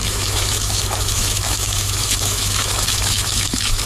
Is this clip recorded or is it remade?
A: remade